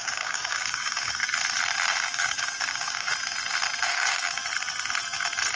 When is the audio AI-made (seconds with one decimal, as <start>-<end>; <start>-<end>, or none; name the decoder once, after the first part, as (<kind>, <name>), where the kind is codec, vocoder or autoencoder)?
0.0-1.2 (codec, DAC); 2.1-3.1; 3.9-4.4